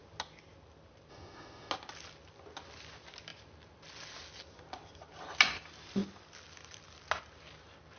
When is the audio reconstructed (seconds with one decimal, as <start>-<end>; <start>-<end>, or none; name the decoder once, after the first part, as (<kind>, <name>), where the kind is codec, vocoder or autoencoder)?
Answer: 1.1-1.7 (autoencoder, DAC-VAE)